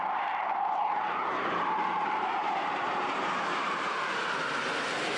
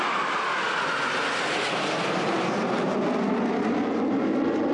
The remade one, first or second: first